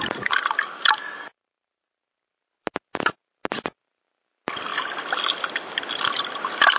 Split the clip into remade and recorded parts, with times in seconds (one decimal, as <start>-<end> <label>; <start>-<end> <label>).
0.0-6.8 recorded